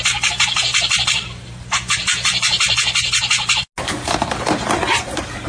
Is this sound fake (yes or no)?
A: no